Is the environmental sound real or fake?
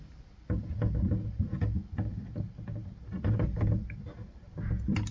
real